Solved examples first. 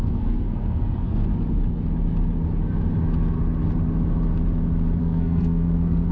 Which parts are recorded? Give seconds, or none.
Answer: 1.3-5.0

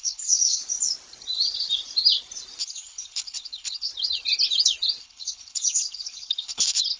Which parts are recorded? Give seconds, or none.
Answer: 0.6-2.6; 3.9-5.0

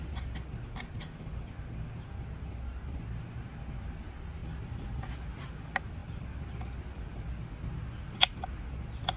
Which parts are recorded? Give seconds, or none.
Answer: 0.0-4.4; 5.1-9.2